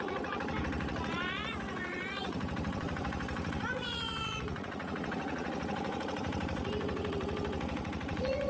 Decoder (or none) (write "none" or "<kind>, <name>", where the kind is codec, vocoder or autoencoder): vocoder, Vocos